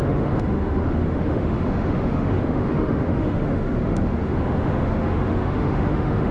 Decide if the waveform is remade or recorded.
remade